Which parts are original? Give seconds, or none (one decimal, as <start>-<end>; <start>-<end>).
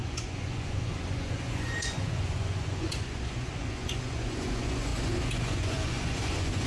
none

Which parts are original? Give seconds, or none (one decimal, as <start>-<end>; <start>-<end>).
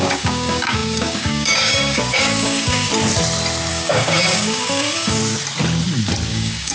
2.9-3.7; 5.2-6.3